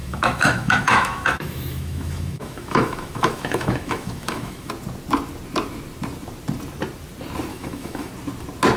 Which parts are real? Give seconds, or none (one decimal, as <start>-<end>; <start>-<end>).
4.7-7.5; 8.1-8.8